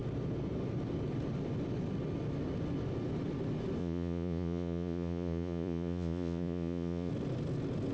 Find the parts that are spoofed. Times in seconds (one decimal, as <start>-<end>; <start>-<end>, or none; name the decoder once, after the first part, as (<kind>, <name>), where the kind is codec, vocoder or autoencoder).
3.8-7.1 (vocoder, Vocos)